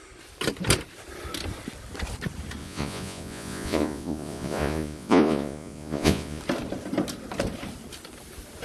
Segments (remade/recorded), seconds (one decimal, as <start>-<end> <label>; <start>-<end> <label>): 0.0-2.6 recorded; 2.6-6.4 remade; 6.4-8.6 recorded